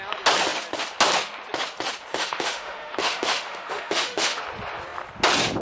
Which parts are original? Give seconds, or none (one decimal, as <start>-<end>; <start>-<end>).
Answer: 0.0-2.1; 4.4-5.6